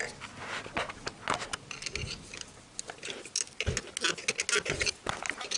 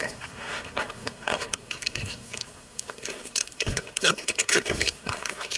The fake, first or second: second